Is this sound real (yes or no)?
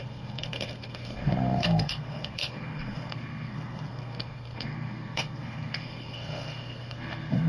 no